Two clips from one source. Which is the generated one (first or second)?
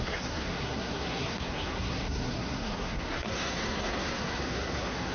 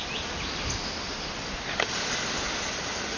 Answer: first